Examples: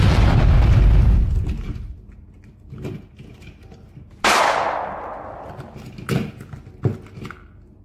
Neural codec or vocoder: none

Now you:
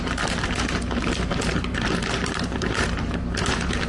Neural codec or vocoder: vocoder, BigVGAN v2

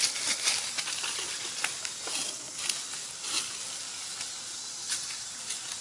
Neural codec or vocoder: none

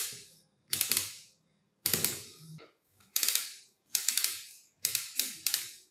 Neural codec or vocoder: codec, DAC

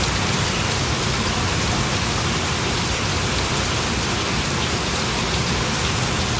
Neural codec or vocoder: none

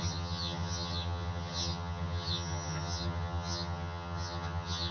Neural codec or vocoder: vocoder, HiFi-GAN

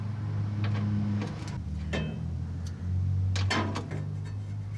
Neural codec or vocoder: none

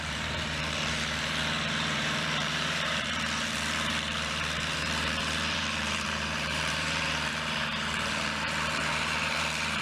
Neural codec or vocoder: vocoder, BigVGAN v2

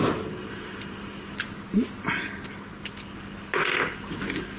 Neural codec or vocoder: none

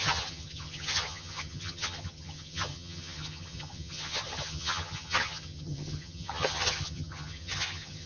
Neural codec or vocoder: vocoder, HiFi-GAN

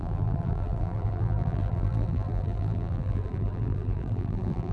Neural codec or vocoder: vocoder, BigVGAN v2